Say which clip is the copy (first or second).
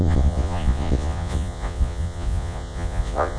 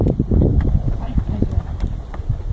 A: first